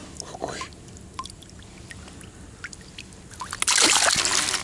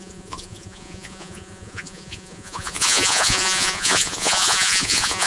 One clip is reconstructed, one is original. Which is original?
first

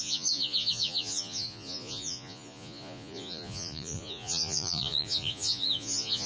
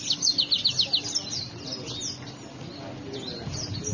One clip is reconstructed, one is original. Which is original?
second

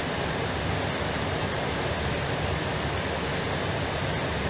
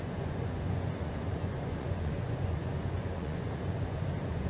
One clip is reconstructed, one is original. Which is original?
first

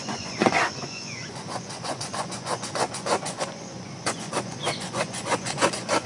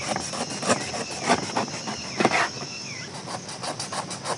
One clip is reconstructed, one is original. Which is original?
second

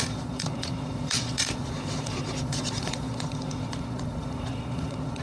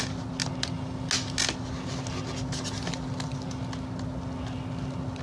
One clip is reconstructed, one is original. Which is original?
second